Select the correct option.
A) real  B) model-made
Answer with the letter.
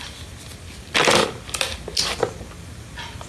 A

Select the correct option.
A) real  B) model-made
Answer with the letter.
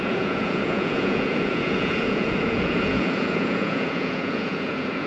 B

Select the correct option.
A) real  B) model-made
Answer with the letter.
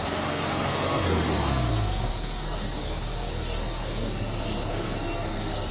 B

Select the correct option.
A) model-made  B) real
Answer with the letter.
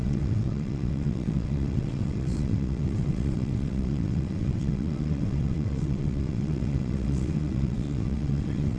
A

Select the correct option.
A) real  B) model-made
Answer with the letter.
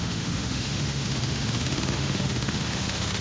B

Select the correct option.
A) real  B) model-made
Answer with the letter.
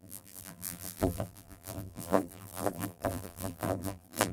B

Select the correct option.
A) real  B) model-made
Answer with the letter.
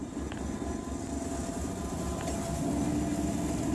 A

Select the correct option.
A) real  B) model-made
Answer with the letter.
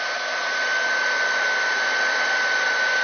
A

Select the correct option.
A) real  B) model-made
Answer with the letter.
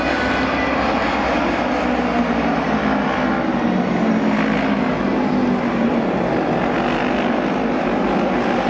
A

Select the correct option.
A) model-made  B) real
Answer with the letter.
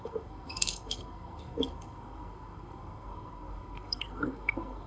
A